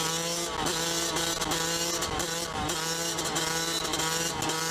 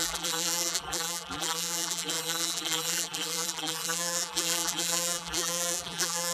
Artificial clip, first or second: second